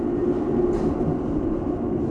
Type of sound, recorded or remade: recorded